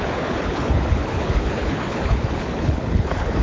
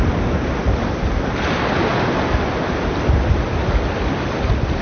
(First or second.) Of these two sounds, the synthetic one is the first